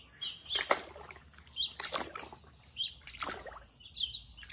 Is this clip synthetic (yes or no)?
no